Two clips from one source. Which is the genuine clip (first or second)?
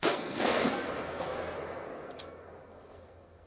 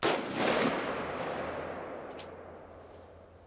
second